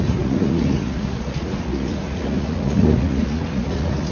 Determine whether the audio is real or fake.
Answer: fake